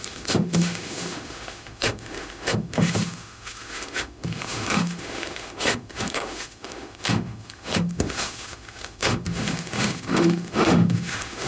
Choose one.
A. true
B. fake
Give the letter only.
B